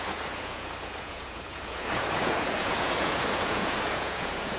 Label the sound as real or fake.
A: fake